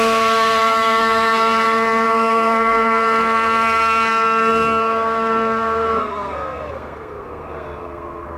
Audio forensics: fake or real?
fake